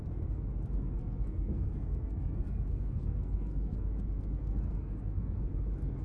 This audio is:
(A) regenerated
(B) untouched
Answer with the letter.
A